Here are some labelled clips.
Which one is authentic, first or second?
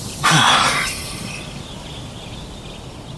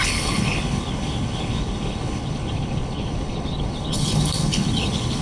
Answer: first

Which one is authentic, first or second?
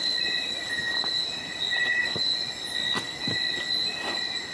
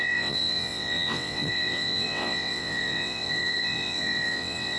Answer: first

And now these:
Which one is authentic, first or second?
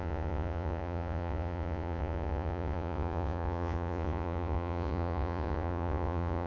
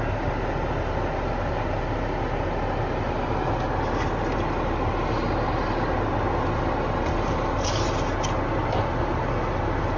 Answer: second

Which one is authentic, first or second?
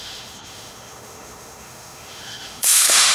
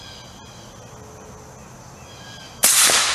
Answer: second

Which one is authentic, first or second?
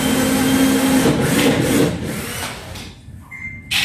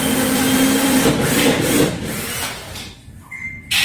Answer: first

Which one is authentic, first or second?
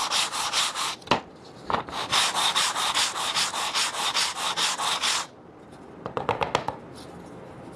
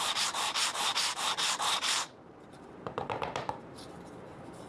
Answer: first